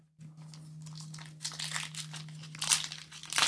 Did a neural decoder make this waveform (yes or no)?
no